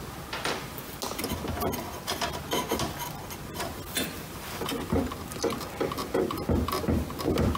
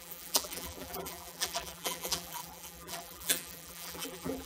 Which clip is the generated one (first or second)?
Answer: second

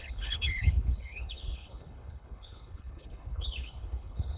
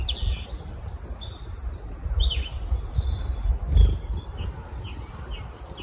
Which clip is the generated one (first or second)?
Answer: first